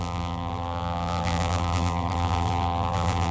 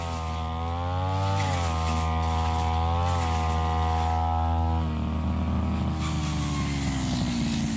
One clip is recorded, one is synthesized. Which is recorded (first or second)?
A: second